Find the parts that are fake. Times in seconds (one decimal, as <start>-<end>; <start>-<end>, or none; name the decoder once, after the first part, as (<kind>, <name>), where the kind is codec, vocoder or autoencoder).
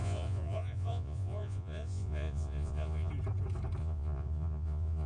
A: 0.0-3.1 (vocoder, Vocos); 3.8-5.1